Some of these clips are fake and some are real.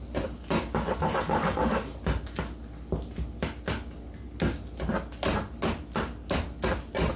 real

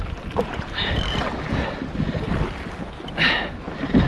real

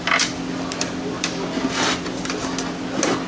real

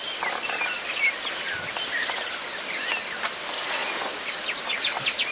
real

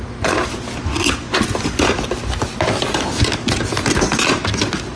real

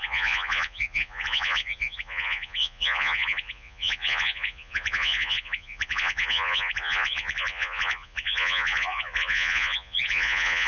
fake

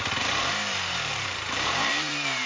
fake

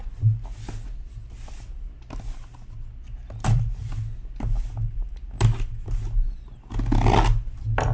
real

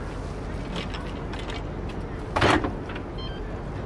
real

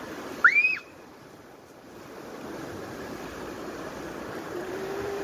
fake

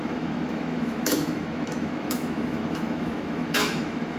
fake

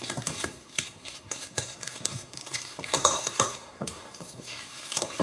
fake